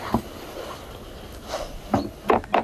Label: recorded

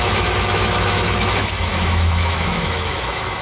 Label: remade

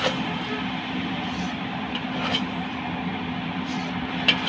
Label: remade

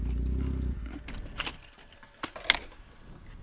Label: recorded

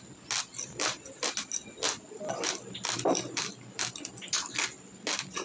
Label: recorded